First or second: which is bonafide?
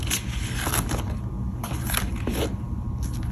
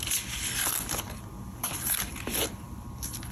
first